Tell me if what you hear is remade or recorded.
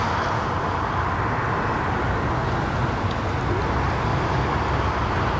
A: recorded